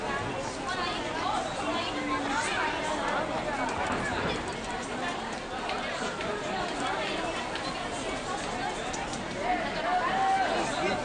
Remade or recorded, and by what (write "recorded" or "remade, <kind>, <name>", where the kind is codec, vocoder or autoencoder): recorded